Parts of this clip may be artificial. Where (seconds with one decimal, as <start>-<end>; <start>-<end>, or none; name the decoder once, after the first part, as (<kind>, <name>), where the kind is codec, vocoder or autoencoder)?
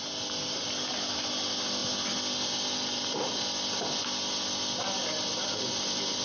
none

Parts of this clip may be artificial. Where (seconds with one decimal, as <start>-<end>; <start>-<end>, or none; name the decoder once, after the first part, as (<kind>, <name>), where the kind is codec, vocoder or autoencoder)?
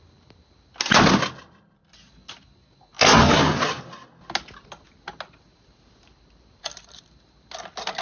none